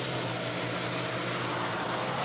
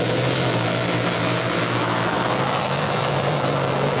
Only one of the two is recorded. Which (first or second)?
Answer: first